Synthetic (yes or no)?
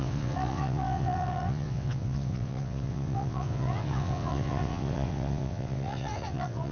yes